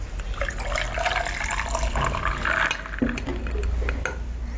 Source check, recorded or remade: recorded